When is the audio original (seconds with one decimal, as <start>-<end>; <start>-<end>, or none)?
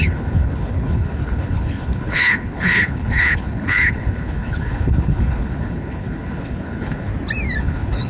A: 7.1-7.6